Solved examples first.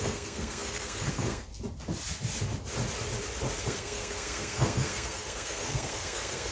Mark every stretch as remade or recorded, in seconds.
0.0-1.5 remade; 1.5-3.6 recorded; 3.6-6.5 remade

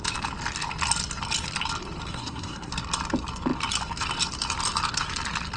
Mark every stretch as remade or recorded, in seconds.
0.0-2.1 recorded; 2.1-2.7 remade; 2.7-5.6 recorded

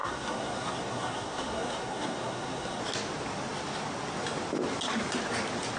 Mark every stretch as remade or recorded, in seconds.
0.0-2.8 remade; 2.8-5.8 recorded